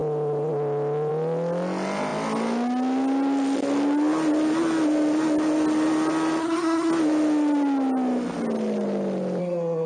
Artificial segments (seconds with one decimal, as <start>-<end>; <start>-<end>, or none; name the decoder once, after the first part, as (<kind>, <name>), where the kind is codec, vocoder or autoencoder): 6.4-6.9 (codec, SNAC); 9.4-9.9